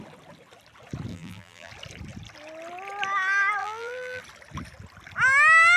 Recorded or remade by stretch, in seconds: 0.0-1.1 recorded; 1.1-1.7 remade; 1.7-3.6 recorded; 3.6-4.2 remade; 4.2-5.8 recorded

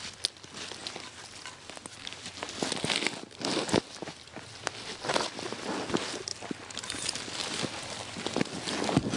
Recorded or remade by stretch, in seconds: 0.0-9.2 recorded

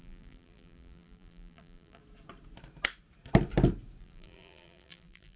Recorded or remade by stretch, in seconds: 0.0-2.0 remade; 2.0-4.0 recorded; 4.0-5.4 remade